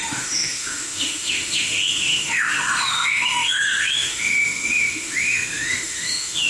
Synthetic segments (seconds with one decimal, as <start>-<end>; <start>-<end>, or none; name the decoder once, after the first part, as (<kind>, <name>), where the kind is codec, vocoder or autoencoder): 0.0-6.5 (autoencoder, DAC-VAE)

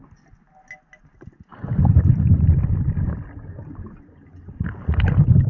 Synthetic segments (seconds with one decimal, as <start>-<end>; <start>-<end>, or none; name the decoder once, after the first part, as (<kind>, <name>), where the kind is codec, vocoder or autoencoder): none

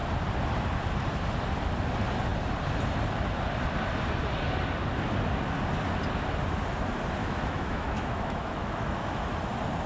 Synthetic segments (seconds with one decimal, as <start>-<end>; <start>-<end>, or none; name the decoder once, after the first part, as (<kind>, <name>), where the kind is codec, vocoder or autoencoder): 7.2-9.3 (autoencoder, DAC-VAE)

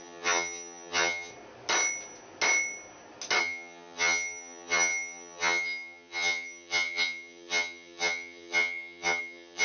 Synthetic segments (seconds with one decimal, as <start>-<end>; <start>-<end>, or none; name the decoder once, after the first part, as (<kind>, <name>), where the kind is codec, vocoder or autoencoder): 0.0-1.3 (vocoder, HiFi-GAN); 3.4-9.6

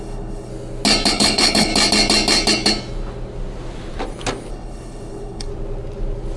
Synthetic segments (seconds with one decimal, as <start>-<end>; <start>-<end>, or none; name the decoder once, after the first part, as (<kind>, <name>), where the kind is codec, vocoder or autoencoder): 0.0-0.5 (codec, HILCodec); 1.1-1.7; 4.5-5.5

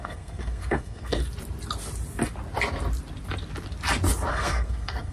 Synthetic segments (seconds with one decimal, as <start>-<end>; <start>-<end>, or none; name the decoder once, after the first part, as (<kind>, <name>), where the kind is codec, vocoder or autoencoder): 0.0-1.2 (codec, SNAC); 4.3-5.1

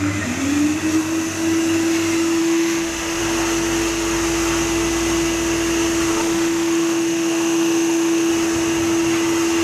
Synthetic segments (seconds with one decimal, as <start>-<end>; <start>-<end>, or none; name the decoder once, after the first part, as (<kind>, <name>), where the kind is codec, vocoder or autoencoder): 2.4-3.2 (autoencoder, DAC-VAE); 6.1-8.3

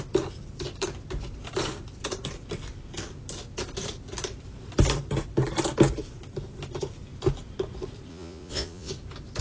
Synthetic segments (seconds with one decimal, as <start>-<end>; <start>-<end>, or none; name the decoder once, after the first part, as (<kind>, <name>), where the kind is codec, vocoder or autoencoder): 8.1-8.9 (vocoder, Vocos)